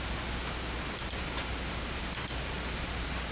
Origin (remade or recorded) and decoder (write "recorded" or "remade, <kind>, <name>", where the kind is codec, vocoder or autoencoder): recorded